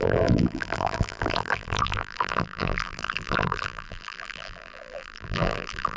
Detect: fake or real fake